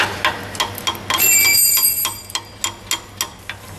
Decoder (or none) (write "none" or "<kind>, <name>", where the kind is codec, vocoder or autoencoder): none